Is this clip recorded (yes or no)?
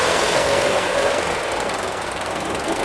no